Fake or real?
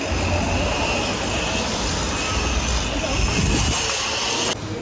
real